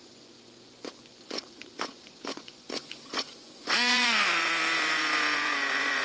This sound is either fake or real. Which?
fake